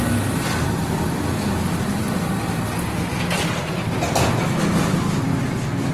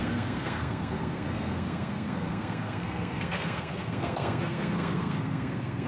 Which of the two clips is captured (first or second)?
first